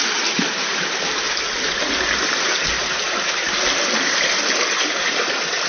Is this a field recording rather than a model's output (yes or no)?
yes